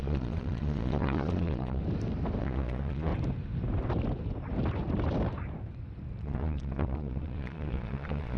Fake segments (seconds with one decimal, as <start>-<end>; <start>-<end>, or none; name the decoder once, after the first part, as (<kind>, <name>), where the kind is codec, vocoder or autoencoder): 0.0-1.8 (vocoder, Vocos); 2.4-3.1; 6.2-8.4